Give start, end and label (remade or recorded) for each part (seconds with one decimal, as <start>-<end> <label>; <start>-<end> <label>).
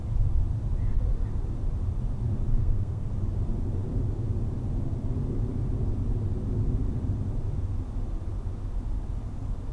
0.0-2.5 recorded; 2.5-3.1 remade; 3.1-9.7 recorded